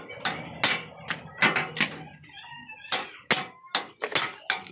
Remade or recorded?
recorded